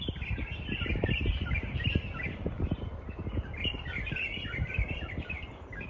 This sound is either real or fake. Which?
fake